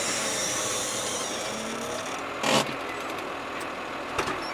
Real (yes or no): yes